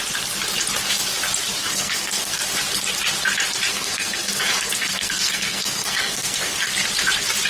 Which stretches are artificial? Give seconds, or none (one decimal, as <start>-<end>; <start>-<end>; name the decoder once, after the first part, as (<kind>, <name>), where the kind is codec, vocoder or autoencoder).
1.6-2.4 (codec, SNAC); 3.7-6.7